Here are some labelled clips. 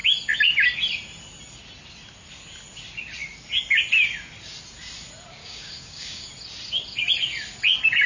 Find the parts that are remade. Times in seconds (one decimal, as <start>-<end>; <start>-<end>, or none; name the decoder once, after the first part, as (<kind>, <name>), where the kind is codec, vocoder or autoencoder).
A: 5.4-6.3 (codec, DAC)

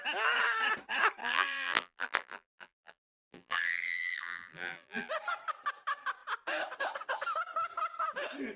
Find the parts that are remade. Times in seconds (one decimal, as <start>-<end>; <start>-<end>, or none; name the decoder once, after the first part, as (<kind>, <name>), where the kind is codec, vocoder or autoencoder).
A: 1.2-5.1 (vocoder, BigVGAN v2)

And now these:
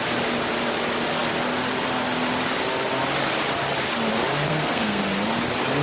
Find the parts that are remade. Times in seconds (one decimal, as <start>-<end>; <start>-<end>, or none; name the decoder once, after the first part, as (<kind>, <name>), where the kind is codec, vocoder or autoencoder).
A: 4.5-5.0 (codec, SNAC)